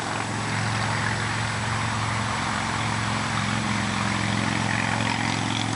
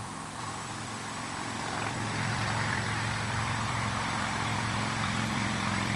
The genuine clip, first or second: first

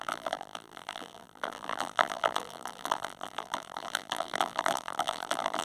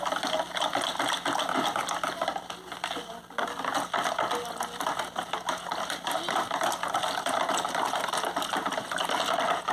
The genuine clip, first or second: second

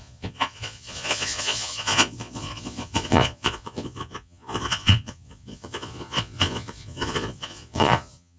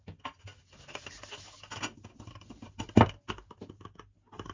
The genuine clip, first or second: second